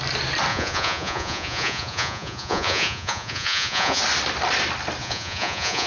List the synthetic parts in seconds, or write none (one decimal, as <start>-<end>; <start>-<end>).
0.5-4.0; 5.0-5.9

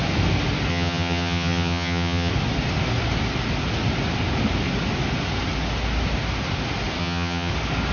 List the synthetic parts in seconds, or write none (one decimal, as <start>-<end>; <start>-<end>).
0.7-2.3; 7.0-7.5

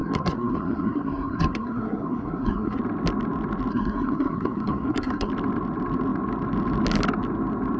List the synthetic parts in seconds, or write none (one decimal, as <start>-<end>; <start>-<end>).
0.0-2.8; 3.7-5.3

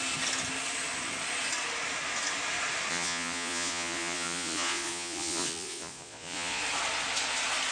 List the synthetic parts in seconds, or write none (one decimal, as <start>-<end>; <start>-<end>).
2.9-6.6

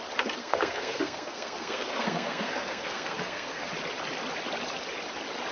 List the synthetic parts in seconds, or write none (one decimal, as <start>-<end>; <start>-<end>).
0.4-3.7

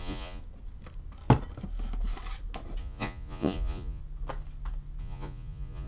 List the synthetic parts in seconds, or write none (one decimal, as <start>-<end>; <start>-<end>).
0.0-0.4; 2.8-4.0; 5.0-5.9

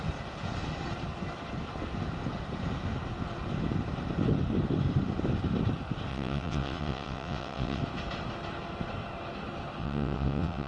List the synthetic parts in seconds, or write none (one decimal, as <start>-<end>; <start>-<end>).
6.1-7.8; 9.8-10.7

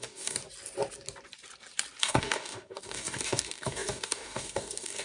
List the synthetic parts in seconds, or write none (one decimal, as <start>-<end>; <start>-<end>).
0.0-0.4; 2.0-5.0